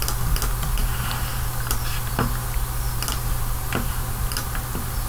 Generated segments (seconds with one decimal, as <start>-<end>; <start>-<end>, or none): none

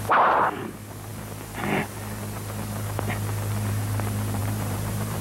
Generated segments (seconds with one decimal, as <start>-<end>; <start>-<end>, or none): 4.4-5.2